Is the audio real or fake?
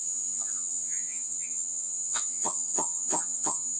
fake